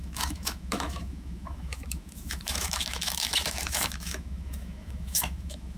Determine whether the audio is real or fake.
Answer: fake